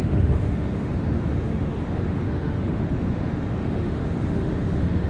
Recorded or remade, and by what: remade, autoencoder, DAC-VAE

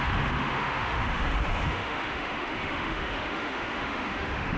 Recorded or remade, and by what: remade, autoencoder, DAC-VAE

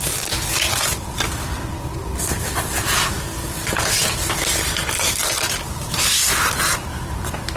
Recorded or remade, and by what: recorded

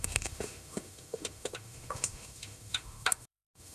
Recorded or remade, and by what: remade, autoencoder, DAC-VAE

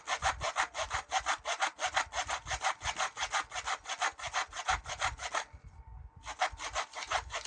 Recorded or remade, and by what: recorded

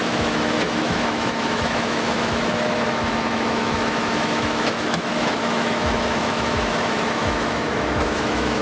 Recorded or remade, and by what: remade, autoencoder, DAC-VAE